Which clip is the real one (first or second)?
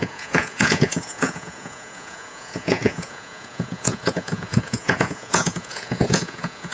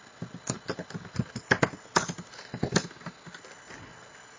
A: second